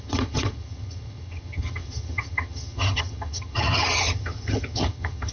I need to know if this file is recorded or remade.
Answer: remade